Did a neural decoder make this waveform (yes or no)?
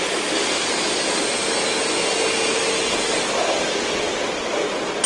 no